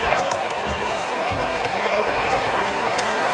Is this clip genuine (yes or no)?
no